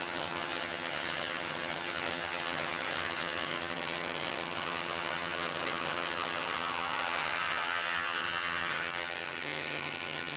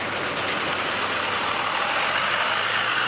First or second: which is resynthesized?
first